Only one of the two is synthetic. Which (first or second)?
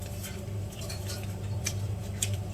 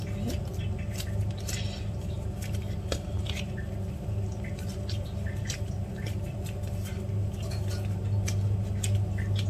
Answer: first